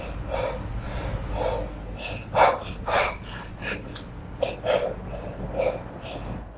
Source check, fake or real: real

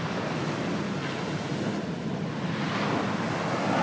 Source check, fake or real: real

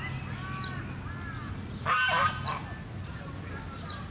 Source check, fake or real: real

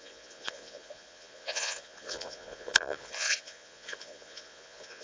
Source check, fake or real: fake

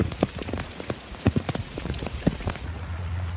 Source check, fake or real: fake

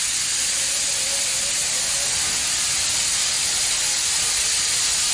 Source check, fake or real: real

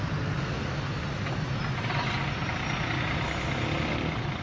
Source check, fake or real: real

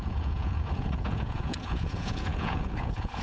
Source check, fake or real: fake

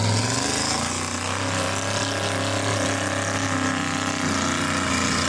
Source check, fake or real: real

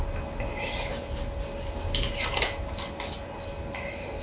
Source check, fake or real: real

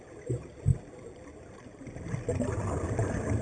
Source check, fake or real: real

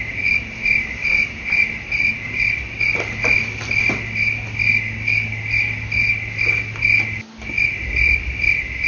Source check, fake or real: real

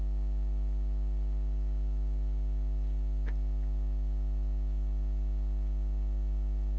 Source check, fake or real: real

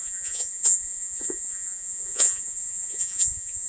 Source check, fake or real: fake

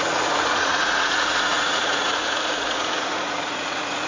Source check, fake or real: fake